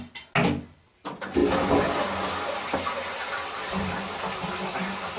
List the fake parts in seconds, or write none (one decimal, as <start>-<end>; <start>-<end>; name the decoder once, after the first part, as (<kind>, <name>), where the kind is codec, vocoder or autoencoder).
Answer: none